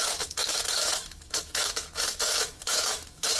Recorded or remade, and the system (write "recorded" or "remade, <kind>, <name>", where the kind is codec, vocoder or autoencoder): remade, autoencoder, DAC-VAE